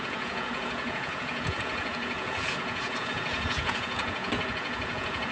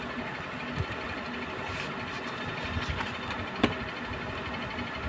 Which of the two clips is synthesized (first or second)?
first